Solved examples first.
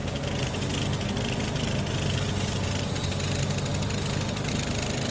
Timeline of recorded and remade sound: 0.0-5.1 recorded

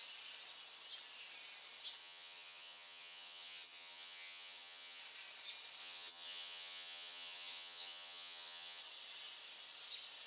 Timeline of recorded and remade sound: 0.0-2.0 recorded; 2.0-5.0 remade; 5.0-5.8 recorded; 5.8-8.8 remade; 8.8-10.3 recorded